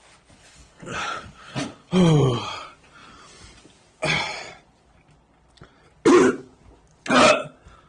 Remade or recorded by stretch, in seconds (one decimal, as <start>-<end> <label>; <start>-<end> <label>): 0.0-0.4 recorded; 0.4-1.9 remade; 1.9-7.9 recorded